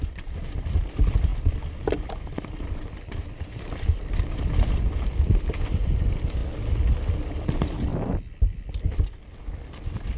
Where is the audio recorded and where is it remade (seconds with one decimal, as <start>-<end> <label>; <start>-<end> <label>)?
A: 0.0-6.4 remade; 6.4-7.3 recorded; 7.3-7.9 remade; 7.9-10.2 recorded